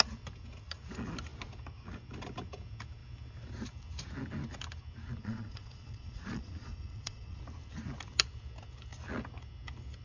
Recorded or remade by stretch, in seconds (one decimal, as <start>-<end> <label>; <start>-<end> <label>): 0.0-5.2 recorded; 5.2-7.4 remade; 7.4-10.0 recorded